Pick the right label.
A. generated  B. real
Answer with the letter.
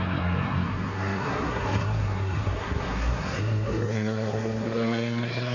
A